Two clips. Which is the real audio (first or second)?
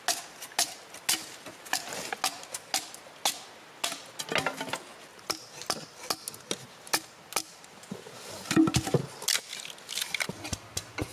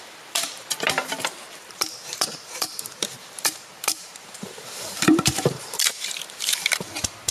first